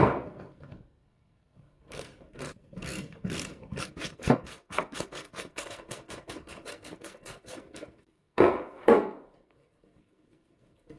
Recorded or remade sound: remade